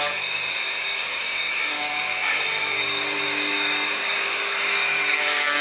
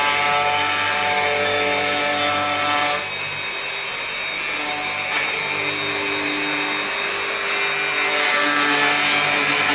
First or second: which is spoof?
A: first